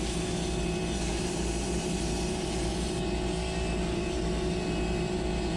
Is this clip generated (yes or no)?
no